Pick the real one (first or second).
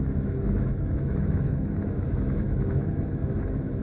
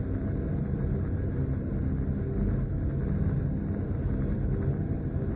second